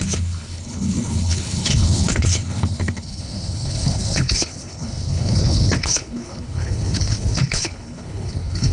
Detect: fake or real fake